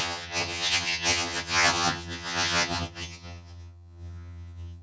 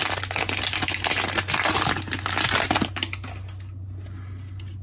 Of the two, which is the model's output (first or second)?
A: first